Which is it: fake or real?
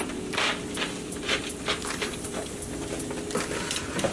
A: fake